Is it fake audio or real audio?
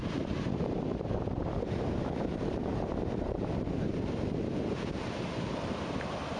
fake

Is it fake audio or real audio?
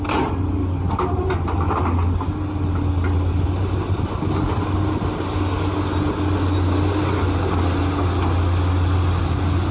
real